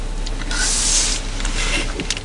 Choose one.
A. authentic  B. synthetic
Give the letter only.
A